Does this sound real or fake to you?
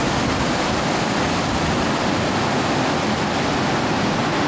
real